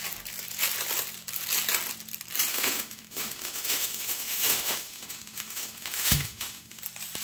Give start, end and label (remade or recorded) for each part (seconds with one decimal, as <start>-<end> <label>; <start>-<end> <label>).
0.0-2.5 recorded; 2.5-6.8 remade; 6.8-7.2 recorded